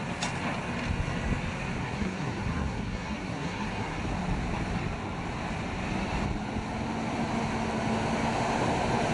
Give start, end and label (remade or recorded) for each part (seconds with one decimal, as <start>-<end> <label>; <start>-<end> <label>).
0.0-1.8 recorded; 1.8-4.0 remade; 4.0-9.1 recorded